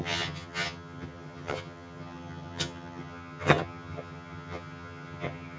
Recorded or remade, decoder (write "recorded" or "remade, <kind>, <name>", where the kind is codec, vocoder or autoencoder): remade, vocoder, HiFi-GAN